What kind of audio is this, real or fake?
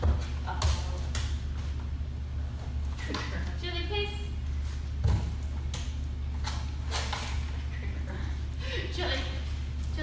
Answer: real